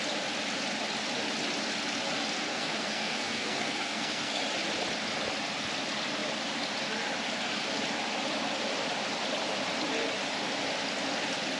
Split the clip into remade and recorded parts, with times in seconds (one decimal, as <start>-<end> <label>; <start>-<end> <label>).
0.0-2.5 recorded; 2.5-4.4 remade; 4.4-11.6 recorded